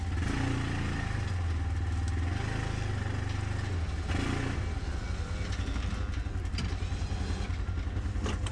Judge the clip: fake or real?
real